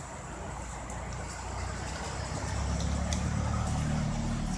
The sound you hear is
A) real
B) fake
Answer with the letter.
A